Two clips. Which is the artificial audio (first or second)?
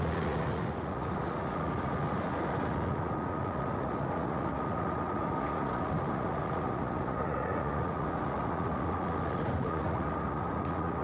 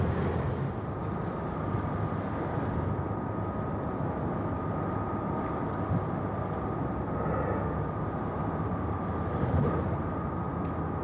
first